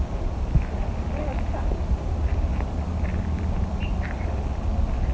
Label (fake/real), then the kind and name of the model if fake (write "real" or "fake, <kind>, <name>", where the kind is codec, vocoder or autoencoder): real